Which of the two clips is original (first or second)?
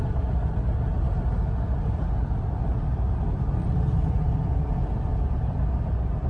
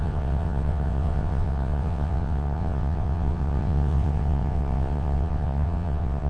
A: first